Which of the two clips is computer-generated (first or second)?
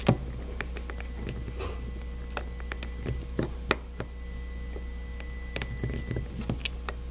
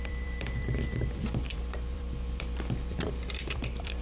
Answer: second